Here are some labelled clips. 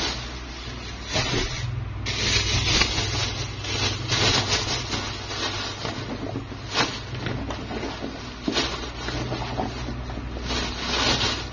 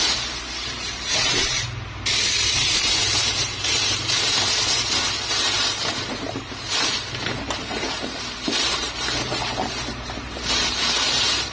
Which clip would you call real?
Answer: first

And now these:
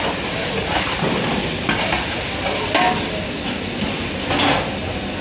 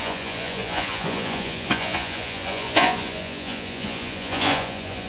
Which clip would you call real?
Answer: first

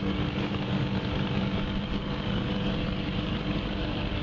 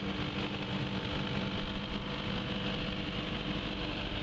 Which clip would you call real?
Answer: second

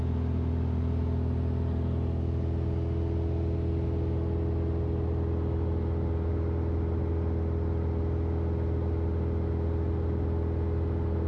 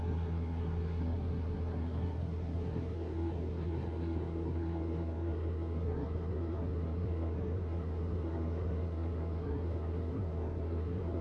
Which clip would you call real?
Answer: first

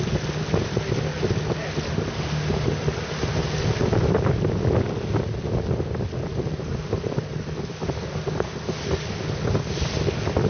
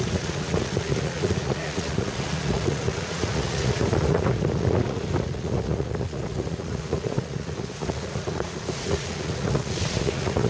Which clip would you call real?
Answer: first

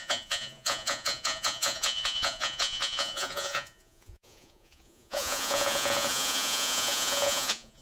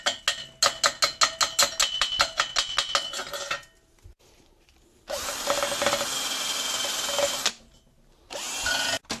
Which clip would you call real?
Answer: second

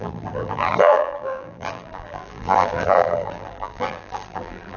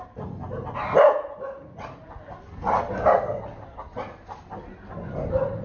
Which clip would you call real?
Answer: second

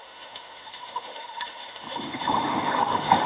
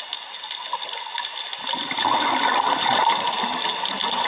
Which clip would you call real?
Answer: second